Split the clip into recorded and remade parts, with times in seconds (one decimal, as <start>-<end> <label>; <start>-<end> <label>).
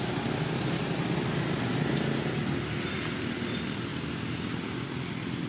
0.0-5.5 recorded